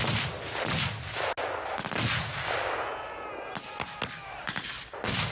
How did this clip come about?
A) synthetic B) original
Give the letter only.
B